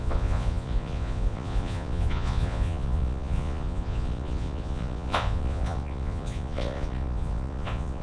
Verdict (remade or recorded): remade